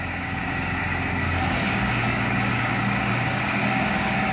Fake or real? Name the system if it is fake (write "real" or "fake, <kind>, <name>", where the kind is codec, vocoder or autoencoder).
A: fake, codec, DAC